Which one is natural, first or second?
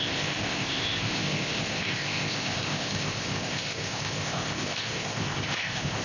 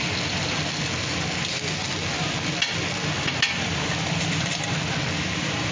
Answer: second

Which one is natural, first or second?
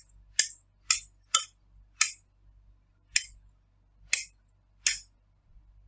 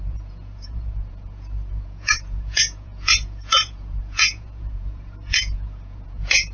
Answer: first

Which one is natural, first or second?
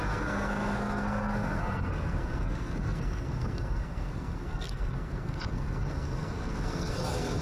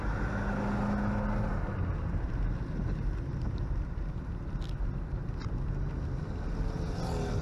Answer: second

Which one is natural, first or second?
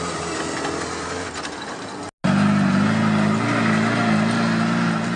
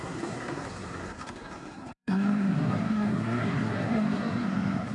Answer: first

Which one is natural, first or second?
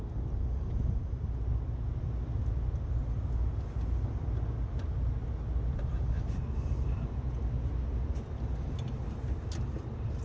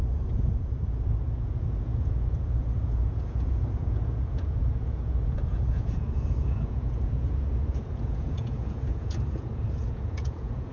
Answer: first